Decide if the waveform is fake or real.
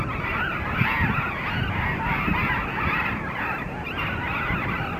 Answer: real